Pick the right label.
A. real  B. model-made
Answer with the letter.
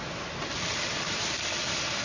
A